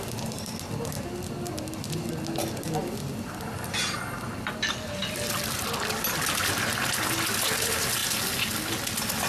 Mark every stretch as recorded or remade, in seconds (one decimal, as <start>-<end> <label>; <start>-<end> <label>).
0.0-9.3 recorded